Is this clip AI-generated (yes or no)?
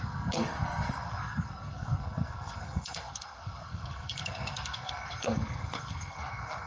yes